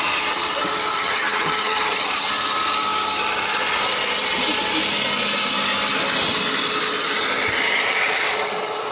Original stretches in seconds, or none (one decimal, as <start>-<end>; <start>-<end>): 0.0-0.9; 2.3-8.9